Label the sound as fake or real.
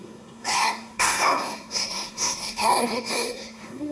fake